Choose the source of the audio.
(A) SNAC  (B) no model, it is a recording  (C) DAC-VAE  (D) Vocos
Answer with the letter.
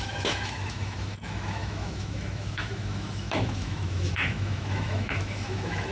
C